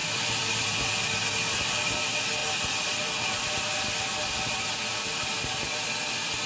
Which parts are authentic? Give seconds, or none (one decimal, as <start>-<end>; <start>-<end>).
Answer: 0.0-6.5